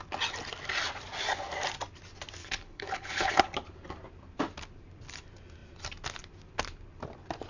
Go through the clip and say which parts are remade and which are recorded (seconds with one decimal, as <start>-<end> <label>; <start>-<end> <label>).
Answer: 0.0-2.4 recorded; 2.4-3.4 remade; 3.4-7.5 recorded